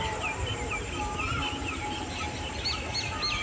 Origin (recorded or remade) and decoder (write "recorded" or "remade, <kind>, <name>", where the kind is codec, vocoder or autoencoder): recorded